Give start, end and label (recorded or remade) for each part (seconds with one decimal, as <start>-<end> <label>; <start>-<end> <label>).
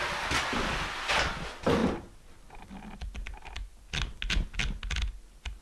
0.0-5.6 recorded